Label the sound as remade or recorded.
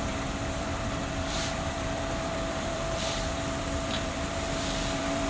remade